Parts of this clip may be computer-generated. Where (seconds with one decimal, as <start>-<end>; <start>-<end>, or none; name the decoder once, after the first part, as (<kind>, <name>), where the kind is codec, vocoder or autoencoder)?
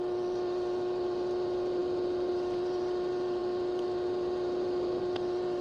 none